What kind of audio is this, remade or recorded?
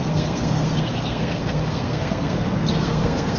remade